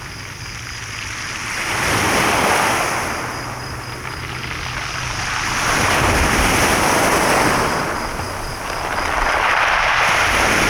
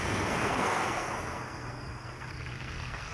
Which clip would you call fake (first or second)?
second